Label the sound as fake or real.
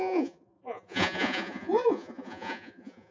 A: fake